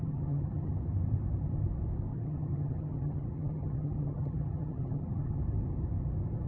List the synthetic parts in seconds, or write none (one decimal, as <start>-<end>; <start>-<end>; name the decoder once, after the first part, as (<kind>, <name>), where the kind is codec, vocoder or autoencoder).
0.0-0.7 (vocoder, HiFi-GAN); 2.1-5.4